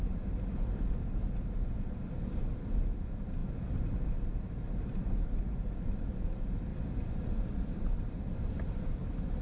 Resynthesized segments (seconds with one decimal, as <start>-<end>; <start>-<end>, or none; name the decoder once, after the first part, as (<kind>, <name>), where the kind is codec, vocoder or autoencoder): 0.0-3.4 (vocoder, BigVGAN v2); 4.3-6.7; 7.4-9.4